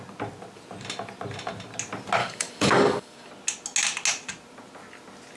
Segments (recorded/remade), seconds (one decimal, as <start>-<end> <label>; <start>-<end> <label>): 0.0-2.2 recorded; 2.2-3.3 remade; 3.3-5.4 recorded